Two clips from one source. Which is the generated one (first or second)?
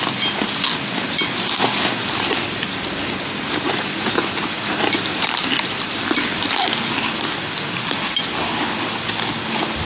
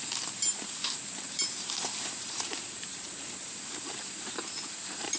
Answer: second